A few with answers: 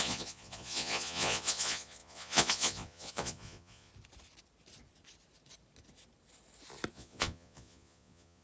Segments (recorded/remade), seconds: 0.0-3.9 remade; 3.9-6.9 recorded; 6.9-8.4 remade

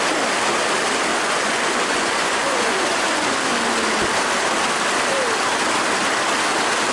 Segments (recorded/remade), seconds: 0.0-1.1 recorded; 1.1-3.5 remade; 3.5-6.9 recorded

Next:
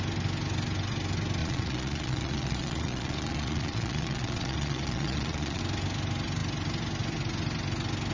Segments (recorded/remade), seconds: 0.0-1.4 recorded; 1.4-5.6 remade; 5.6-8.1 recorded